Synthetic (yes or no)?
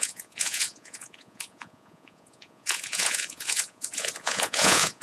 yes